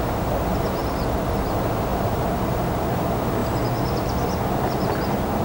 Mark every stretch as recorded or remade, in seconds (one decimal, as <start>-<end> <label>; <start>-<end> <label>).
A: 0.0-0.8 recorded; 0.8-1.4 remade; 1.4-5.4 recorded